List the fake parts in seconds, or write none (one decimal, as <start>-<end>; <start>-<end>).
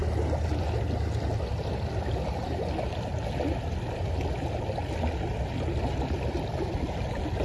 none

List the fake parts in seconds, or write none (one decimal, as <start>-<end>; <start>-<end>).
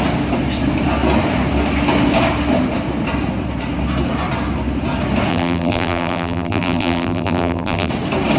5.3-7.9